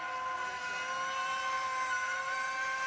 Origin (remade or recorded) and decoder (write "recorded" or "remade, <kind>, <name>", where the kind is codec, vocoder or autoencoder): recorded